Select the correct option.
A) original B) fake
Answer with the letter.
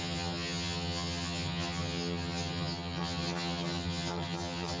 B